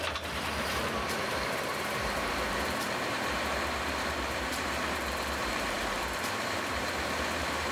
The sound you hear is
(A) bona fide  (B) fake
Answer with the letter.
B